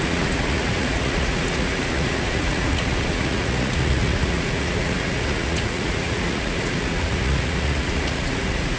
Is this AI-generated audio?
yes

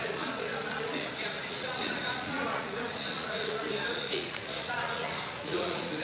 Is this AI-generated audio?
yes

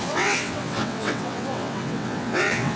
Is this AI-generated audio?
yes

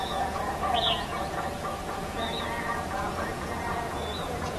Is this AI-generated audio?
yes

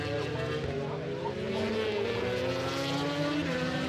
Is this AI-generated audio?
no